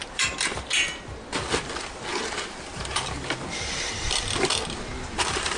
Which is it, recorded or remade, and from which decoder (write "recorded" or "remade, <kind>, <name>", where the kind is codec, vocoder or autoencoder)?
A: remade, vocoder, BigVGAN v2